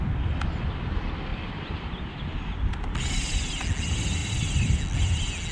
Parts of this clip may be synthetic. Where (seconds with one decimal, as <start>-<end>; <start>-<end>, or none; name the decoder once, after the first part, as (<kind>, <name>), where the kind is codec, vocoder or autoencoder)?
1.3-2.1 (vocoder, BigVGAN v2); 4.2-4.8